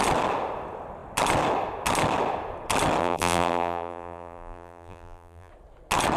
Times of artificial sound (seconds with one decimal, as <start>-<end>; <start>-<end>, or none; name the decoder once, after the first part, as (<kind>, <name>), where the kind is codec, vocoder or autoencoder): 3.0-5.5 (vocoder, BigVGAN v2)